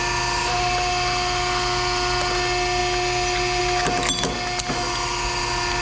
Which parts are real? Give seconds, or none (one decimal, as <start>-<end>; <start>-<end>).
0.0-5.8